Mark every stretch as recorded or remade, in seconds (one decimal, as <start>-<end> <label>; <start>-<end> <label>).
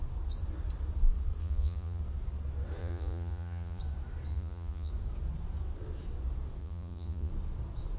0.0-1.4 recorded; 1.4-2.0 remade; 2.0-2.8 recorded; 2.8-3.8 remade; 3.8-4.3 recorded; 4.3-4.9 remade; 4.9-6.6 recorded; 6.6-7.3 remade; 7.3-8.0 recorded